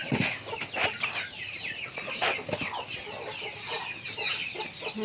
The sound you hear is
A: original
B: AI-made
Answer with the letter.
A